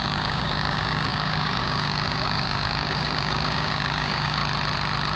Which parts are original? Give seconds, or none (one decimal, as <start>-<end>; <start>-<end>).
4.4-5.2